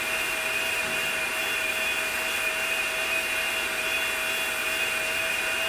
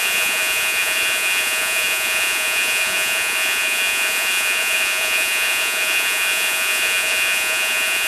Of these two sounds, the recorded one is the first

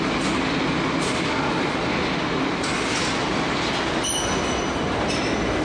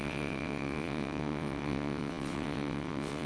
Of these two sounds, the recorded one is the first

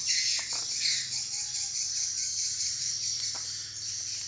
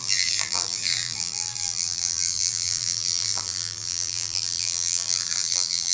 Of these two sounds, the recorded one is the first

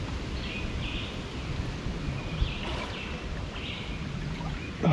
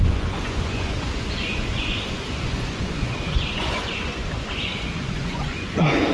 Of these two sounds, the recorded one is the first